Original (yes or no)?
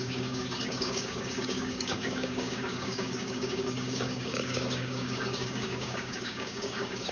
no